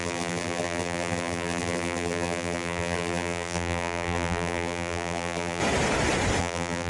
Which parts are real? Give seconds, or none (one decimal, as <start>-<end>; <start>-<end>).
5.6-6.4